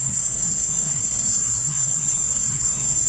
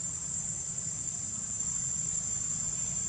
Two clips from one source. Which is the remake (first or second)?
first